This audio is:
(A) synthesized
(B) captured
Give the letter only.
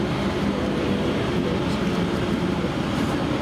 B